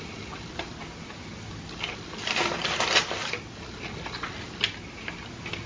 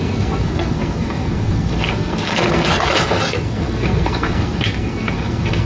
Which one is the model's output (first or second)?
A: second